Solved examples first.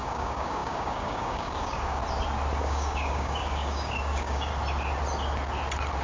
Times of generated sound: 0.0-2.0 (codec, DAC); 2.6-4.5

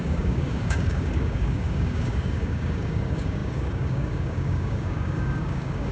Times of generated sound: 0.0-5.9 (codec, DAC)

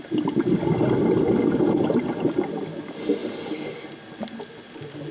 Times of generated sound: none